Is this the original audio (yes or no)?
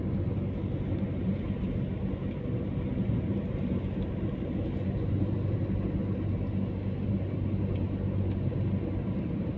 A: yes